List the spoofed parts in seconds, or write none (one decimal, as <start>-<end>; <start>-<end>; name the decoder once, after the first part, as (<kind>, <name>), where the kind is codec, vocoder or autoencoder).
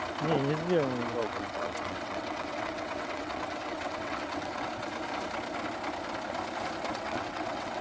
1.2-4.7 (vocoder, WaveNeXt); 6.9-7.8